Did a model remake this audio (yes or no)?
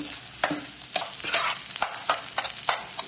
no